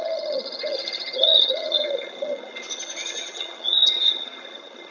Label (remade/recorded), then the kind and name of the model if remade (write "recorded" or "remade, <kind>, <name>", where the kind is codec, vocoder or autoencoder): remade, vocoder, HiFi-GAN